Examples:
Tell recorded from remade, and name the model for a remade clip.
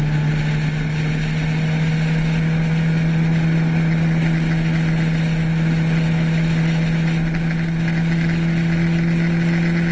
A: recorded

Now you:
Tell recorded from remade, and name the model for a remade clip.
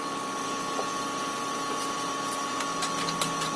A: recorded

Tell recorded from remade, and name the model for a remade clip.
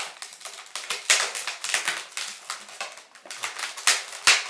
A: recorded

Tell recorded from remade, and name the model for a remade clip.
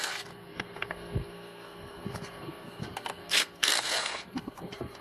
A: remade, codec, SNAC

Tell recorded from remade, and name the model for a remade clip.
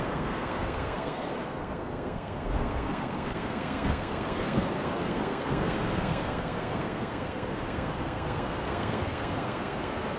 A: remade, codec, SNAC